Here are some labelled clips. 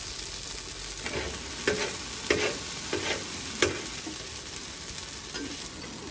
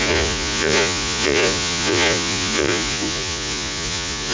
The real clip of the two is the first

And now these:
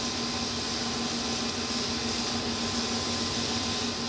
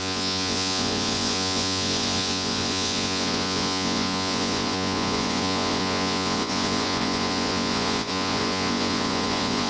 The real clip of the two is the first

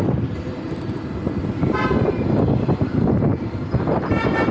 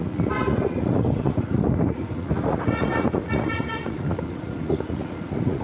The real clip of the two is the first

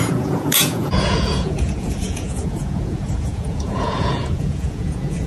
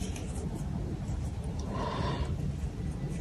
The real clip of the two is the second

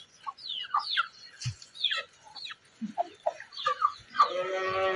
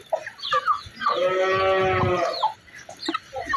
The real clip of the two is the second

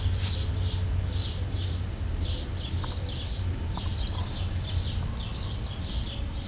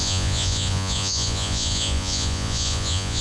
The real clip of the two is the first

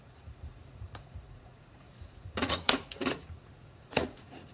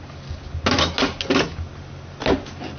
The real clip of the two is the second